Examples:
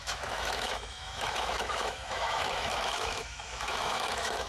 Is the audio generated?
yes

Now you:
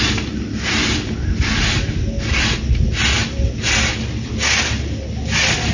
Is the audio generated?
no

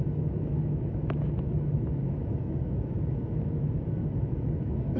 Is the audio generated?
yes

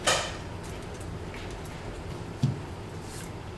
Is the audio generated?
no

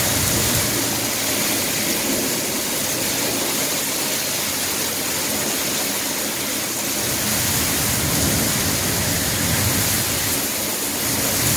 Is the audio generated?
no